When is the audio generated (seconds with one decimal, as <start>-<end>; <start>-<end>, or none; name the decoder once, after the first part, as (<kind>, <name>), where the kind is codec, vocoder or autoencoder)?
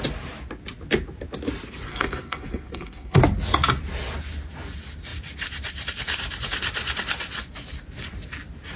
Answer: 1.9-3.2 (codec, SNAC)